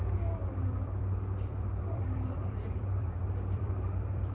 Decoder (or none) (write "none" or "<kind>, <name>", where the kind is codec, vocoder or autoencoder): vocoder, BigVGAN v2